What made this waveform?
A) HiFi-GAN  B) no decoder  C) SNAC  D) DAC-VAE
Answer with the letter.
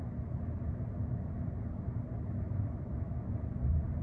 B